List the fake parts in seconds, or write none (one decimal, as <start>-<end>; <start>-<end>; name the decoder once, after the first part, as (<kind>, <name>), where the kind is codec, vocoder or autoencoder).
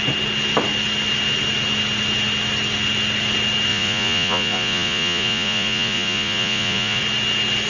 3.7-7.0 (vocoder, Vocos)